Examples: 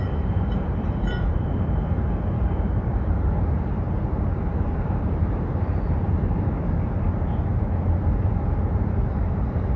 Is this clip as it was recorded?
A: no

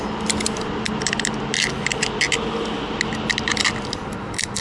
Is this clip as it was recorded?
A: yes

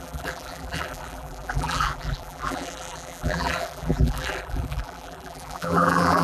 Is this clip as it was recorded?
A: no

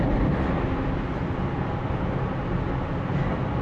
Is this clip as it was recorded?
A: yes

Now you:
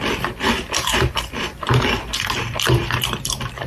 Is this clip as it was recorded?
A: no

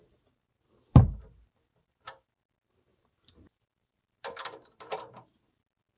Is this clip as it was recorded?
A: no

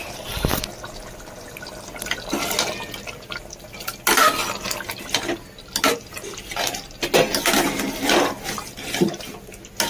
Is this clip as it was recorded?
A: yes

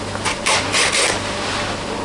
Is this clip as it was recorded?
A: yes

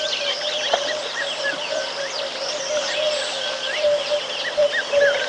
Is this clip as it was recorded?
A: no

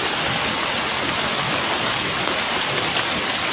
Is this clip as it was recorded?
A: yes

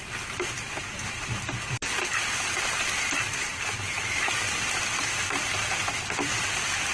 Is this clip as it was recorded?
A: no